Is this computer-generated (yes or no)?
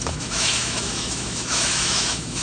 yes